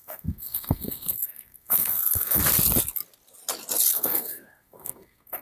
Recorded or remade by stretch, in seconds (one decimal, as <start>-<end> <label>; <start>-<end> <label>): 0.0-2.4 remade; 2.4-3.9 recorded; 3.9-5.4 remade